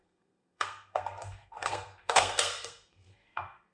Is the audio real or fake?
fake